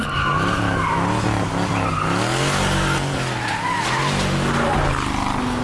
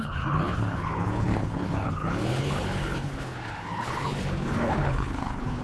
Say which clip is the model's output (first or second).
second